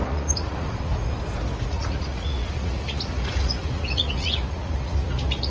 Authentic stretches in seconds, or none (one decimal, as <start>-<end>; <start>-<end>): 0.9-1.7